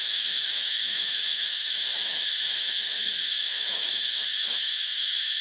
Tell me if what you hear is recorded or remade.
remade